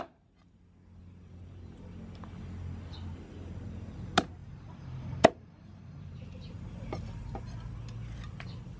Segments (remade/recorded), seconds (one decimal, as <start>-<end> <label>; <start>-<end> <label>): 0.0-1.0 recorded; 1.0-1.5 remade; 1.5-4.4 recorded; 4.4-7.5 remade; 7.5-8.8 recorded